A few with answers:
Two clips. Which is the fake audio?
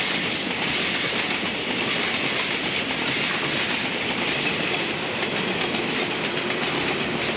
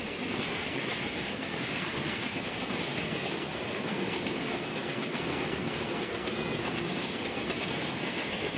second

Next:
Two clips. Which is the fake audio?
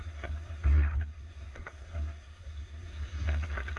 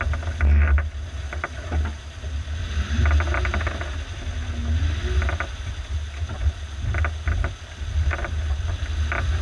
first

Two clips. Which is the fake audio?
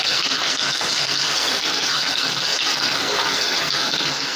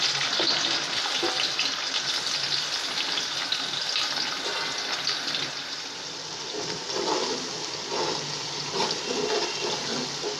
first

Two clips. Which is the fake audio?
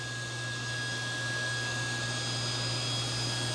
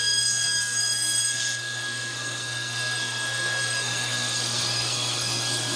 second